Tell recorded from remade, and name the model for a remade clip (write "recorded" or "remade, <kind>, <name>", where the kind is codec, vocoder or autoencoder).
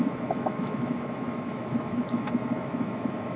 remade, autoencoder, DAC-VAE